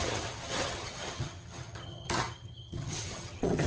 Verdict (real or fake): fake